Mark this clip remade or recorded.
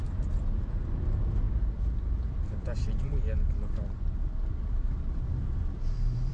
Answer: remade